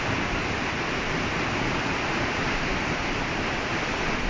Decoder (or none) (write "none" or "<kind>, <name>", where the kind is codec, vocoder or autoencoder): none